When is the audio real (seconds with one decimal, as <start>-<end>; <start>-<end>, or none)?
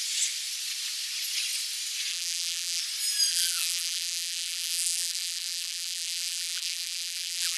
0.0-2.1; 2.8-3.3